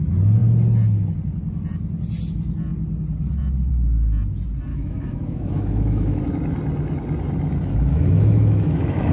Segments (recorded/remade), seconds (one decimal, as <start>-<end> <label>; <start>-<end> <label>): 0.0-4.7 recorded; 4.7-6.2 remade; 6.2-7.9 recorded; 7.9-9.1 remade